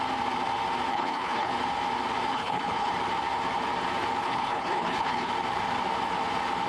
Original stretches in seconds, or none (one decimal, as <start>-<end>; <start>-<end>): 0.0-0.9; 1.5-2.3; 2.9-4.2; 5.3-6.7